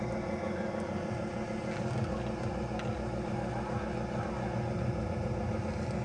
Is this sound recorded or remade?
recorded